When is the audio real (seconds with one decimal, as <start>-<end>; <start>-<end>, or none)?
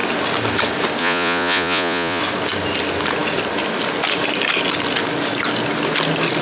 0.0-1.0; 2.2-6.4